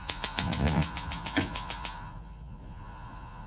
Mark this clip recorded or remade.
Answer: remade